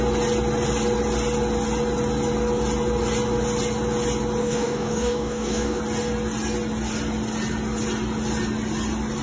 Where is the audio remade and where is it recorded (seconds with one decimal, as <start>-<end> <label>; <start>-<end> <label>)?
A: 0.0-4.4 recorded; 4.4-5.8 remade; 5.8-9.2 recorded